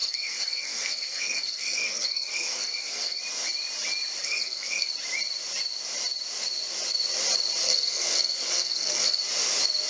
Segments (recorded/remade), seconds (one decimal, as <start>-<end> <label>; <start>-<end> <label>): 0.0-3.2 remade; 3.2-4.2 recorded; 4.2-4.9 remade; 4.9-7.6 recorded; 7.6-9.2 remade; 9.2-9.9 recorded

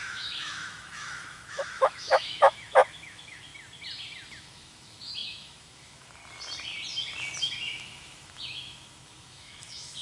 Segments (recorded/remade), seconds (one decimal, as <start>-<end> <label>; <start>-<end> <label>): 0.0-3.5 remade; 3.5-4.4 recorded; 4.4-6.2 remade; 6.2-7.4 recorded; 7.4-10.0 remade

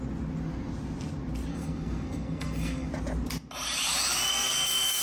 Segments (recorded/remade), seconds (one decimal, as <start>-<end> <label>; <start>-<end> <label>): 0.0-1.5 recorded; 1.5-2.9 remade; 2.9-4.3 recorded; 4.3-5.0 remade